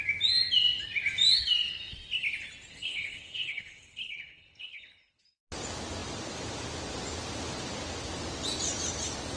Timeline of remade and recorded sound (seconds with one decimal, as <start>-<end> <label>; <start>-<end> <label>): 0.0-2.7 recorded; 2.7-5.2 remade; 5.2-9.4 recorded